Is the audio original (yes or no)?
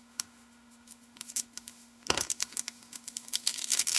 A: no